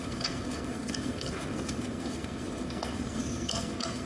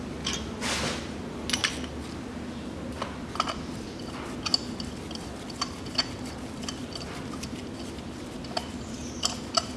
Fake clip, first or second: first